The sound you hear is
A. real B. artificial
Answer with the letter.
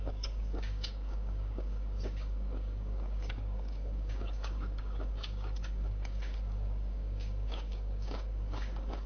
B